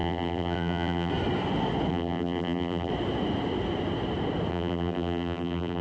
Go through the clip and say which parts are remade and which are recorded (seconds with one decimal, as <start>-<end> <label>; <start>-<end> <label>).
0.0-1.1 remade; 1.1-1.9 recorded; 1.9-2.9 remade; 2.9-4.5 recorded; 4.5-5.8 remade